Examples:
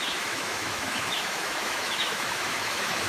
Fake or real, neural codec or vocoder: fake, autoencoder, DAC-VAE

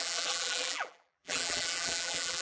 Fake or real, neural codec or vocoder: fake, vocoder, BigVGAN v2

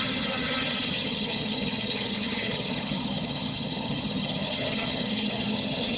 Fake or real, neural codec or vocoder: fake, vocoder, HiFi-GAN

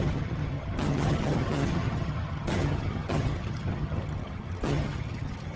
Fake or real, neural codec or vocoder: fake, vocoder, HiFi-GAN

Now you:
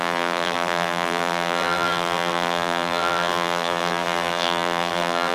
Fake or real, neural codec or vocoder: fake, vocoder, BigVGAN v2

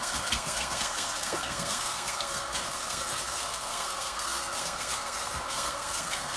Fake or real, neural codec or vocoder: fake, codec, SNAC